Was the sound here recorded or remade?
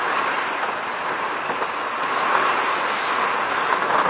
recorded